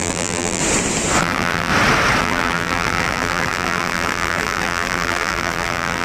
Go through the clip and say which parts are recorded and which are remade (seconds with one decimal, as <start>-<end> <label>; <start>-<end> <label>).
0.0-0.6 remade; 0.6-1.2 recorded; 1.2-1.7 remade; 1.7-2.2 recorded; 2.2-6.0 remade